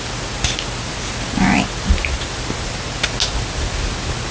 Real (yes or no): yes